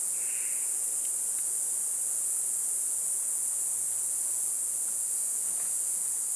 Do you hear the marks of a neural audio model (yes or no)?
yes